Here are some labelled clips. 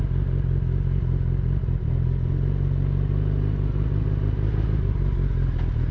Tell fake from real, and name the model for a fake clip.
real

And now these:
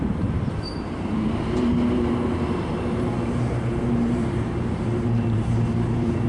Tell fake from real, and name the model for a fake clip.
fake, vocoder, BigVGAN v2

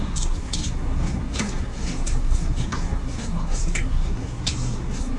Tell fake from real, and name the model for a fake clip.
fake, codec, SNAC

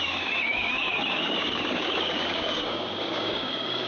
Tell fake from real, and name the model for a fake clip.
fake, codec, DAC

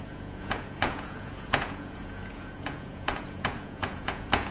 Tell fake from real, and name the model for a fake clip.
fake, vocoder, Vocos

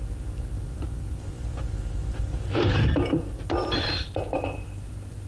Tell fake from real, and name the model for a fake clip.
real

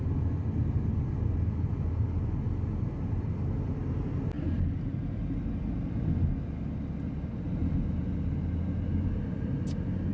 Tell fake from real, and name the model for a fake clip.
real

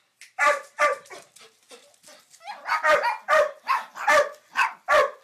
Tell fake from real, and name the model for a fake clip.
real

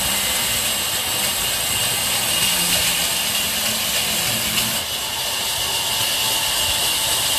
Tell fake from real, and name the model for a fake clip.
real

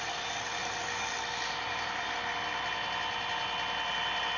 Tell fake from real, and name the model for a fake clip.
real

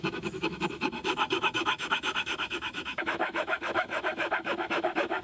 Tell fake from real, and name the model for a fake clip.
fake, autoencoder, DAC-VAE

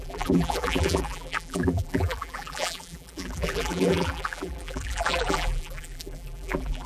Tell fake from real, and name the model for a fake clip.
fake, vocoder, BigVGAN v2